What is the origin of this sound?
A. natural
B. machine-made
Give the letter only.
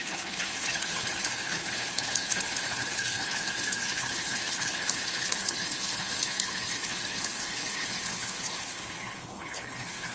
B